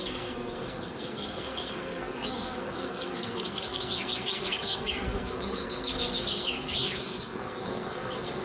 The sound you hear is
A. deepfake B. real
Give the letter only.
A